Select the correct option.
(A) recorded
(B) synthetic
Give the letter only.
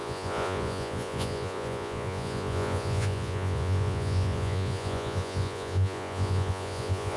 B